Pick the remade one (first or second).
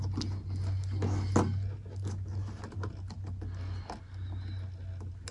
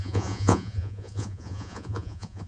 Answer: second